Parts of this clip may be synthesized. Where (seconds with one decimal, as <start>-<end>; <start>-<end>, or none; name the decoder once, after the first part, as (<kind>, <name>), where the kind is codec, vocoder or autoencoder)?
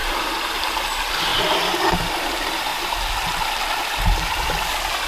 0.0-0.5 (vocoder, BigVGAN v2)